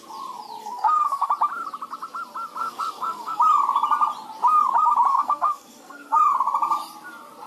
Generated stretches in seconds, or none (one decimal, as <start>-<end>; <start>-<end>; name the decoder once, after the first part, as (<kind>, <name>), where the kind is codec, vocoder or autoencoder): 0.6-1.3 (codec, SNAC); 2.6-3.4; 5.1-6.2